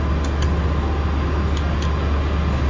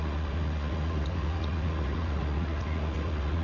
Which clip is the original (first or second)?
first